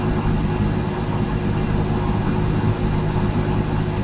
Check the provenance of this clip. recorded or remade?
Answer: recorded